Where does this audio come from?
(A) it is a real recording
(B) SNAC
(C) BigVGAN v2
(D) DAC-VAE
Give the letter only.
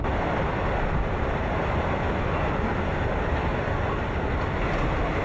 A